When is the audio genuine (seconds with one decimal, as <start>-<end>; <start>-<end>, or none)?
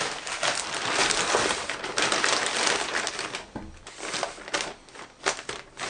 0.0-5.9